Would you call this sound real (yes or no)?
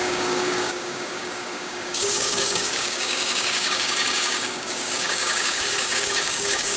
no